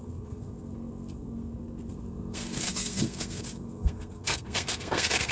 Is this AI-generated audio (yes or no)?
yes